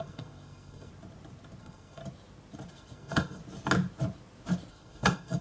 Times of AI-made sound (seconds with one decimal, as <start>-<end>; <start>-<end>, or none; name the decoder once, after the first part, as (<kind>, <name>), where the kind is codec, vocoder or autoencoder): 0.0-0.9 (codec, SNAC); 1.6-2.0; 2.7-3.4; 4.7-5.4